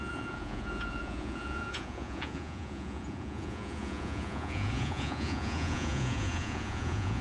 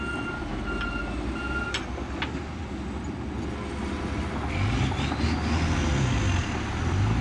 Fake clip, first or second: first